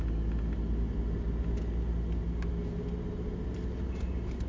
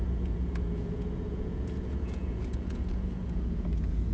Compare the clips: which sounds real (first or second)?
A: first